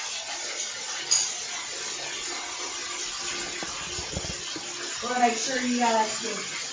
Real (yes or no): yes